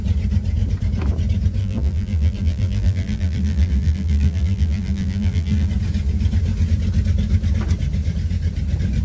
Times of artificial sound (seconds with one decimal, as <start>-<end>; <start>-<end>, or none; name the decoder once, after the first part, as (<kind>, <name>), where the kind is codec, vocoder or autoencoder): 1.6-5.7 (vocoder, BigVGAN v2)

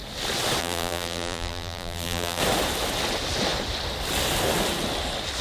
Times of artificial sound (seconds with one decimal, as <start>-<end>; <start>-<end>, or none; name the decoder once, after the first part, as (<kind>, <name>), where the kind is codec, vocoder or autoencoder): 0.6-2.4 (vocoder, BigVGAN v2)

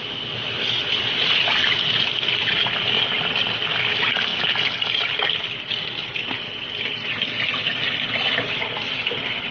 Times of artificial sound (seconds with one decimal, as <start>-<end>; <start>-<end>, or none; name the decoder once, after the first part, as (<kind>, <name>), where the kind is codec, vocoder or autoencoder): none

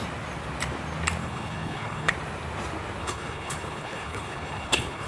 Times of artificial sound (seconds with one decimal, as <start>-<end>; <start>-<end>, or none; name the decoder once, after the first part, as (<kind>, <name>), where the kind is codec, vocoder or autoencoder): 1.2-2.1 (codec, HILCodec); 3.0-5.1

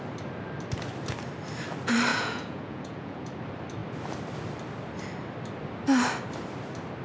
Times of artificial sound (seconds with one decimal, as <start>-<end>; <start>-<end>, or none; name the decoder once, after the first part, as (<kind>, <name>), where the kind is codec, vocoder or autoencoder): 2.1-3.4 (vocoder, Vocos)

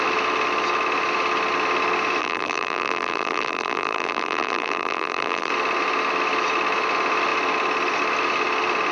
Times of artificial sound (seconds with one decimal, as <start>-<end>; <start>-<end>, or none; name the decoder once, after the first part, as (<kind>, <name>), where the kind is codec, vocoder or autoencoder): 2.2-5.5 (vocoder, BigVGAN v2)